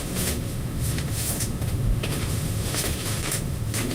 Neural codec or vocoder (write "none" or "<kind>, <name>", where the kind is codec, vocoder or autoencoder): autoencoder, DAC-VAE